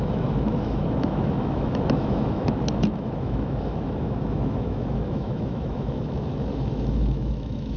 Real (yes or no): no